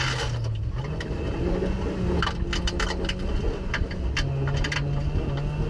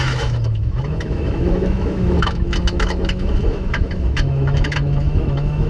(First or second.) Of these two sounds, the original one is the first